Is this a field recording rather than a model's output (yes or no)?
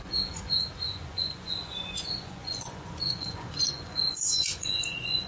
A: no